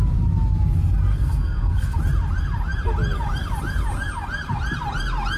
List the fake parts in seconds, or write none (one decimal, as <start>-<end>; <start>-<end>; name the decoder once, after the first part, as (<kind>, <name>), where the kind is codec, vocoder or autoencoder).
1.1-2.0 (codec, SNAC)